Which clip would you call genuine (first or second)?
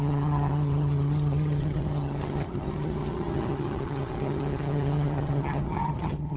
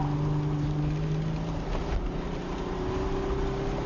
second